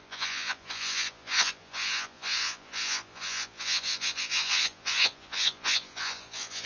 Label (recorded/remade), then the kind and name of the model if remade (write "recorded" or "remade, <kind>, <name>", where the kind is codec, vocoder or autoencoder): remade, vocoder, Vocos